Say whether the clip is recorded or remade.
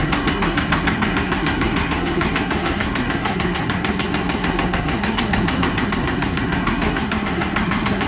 remade